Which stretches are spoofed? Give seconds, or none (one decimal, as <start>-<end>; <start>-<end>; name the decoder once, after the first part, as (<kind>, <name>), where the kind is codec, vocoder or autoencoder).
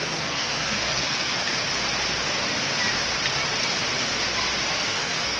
0.0-1.5 (codec, SNAC); 4.7-5.4